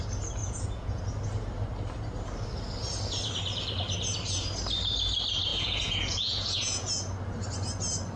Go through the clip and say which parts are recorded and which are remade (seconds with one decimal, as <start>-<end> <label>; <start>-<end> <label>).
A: 0.0-0.4 recorded; 0.4-1.0 remade; 1.0-5.5 recorded; 5.5-6.9 remade; 6.9-8.2 recorded